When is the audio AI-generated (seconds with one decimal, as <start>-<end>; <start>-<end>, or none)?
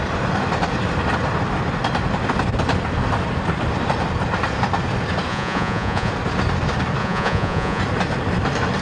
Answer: 5.3-6.1; 7.0-7.8